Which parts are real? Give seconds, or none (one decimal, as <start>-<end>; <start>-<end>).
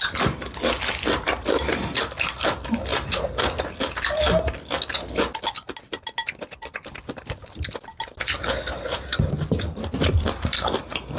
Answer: 0.0-11.2